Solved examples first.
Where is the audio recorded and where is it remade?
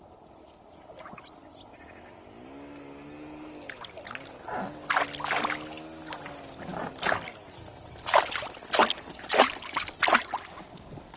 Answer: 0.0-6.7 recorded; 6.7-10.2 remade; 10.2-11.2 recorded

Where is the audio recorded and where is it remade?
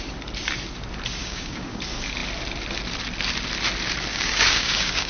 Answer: 0.0-1.2 recorded; 1.2-1.8 remade; 1.8-4.1 recorded; 4.1-5.1 remade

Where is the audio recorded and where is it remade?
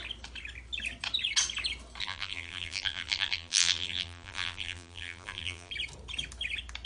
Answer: 0.0-2.0 recorded; 2.0-5.7 remade; 5.7-6.9 recorded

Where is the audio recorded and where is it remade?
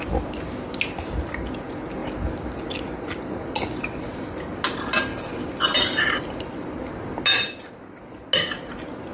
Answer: 0.0-9.1 recorded